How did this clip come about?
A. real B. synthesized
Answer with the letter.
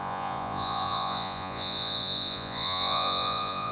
B